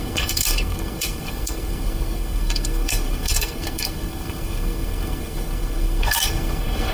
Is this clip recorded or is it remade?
remade